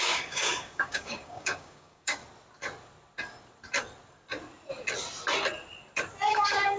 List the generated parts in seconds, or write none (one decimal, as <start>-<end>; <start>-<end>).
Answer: 0.0-2.2; 6.3-6.8